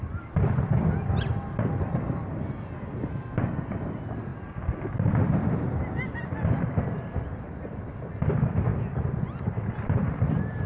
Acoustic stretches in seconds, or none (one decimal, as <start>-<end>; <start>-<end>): 0.0-10.7